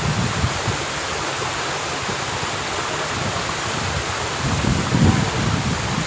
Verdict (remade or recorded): recorded